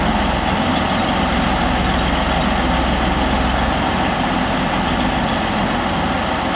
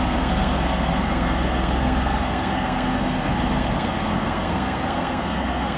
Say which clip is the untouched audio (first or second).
first